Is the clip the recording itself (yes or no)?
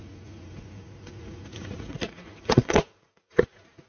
no